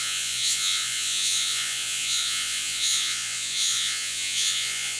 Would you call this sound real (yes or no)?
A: no